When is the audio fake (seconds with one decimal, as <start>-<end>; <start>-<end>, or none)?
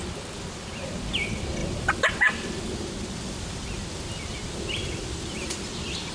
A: none